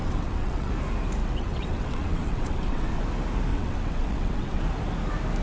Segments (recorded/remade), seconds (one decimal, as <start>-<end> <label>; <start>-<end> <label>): 0.0-0.7 remade; 0.7-1.2 recorded; 1.2-3.0 remade; 3.0-3.5 recorded; 3.5-4.6 remade; 4.6-5.4 recorded